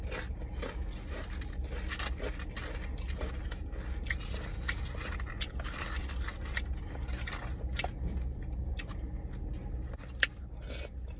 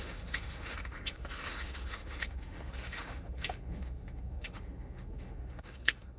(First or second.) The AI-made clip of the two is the second